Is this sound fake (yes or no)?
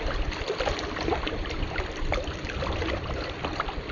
yes